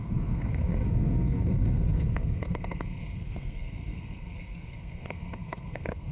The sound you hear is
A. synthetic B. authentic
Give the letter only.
A